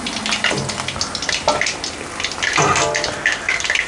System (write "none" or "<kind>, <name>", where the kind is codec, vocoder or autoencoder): none